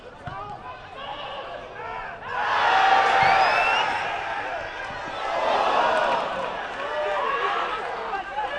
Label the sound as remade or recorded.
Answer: recorded